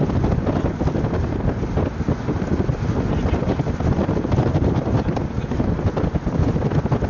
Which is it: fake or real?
real